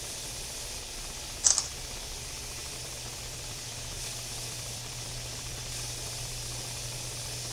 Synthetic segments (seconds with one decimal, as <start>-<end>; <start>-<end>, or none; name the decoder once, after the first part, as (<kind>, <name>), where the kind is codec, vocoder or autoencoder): 2.6-6.5 (vocoder, BigVGAN v2)